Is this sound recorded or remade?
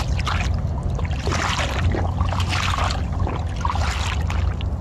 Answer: recorded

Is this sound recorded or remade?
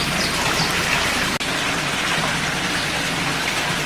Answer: recorded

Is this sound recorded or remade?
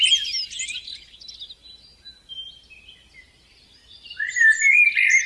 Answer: recorded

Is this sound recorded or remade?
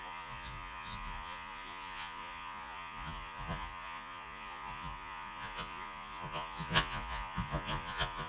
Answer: remade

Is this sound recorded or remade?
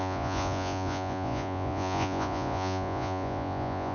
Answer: remade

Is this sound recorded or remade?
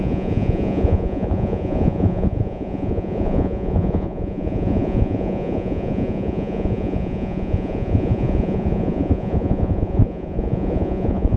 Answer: remade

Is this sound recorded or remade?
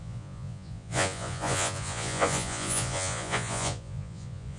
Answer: remade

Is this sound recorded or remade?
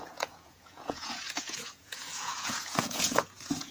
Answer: remade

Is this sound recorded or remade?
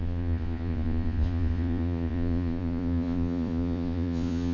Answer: remade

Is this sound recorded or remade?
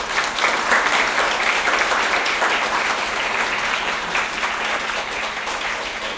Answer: recorded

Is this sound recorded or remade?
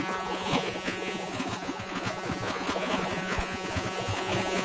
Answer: remade